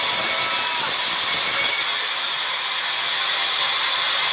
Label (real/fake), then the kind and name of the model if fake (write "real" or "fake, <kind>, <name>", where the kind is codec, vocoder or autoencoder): real